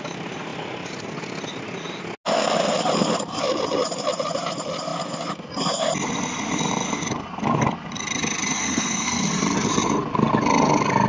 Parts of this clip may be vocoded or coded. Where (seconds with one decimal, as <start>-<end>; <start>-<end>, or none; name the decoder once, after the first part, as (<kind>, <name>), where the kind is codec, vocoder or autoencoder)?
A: 8.6-9.2 (codec, SNAC)